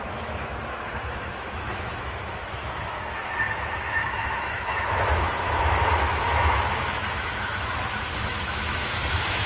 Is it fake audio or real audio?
fake